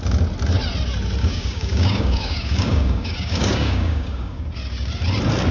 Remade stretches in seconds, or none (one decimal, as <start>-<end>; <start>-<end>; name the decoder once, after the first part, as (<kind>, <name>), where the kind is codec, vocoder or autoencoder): 1.2-4.5 (codec, DAC)